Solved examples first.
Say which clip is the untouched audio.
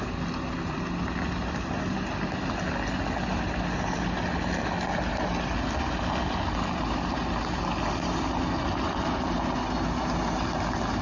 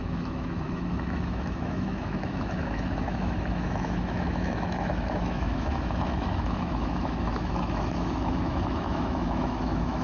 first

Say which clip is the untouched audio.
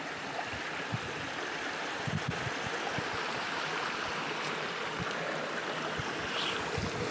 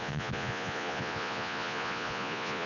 first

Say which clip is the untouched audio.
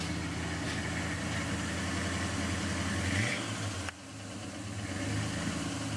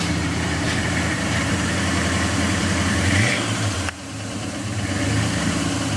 first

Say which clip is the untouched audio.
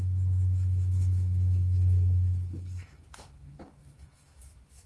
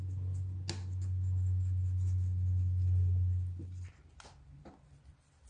second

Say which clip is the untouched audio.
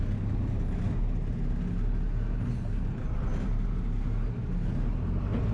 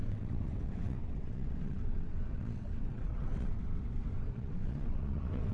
first